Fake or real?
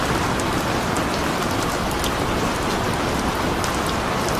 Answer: real